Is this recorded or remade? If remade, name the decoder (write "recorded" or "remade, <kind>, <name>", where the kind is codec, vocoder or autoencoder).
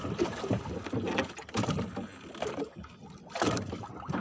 recorded